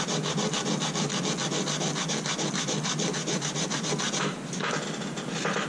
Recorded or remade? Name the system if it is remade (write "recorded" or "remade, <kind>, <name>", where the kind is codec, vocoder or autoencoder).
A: recorded